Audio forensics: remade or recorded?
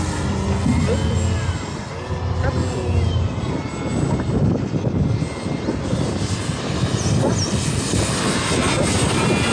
recorded